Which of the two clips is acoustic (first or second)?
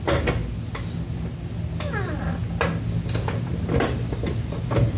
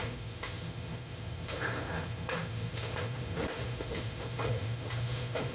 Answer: first